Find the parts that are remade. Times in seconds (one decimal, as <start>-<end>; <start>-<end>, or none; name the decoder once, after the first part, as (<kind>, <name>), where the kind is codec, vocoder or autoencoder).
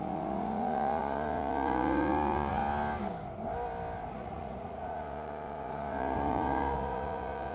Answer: 0.0-2.6 (vocoder, Vocos); 4.1-7.5